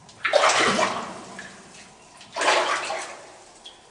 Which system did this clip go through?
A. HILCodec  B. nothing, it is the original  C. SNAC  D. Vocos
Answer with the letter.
B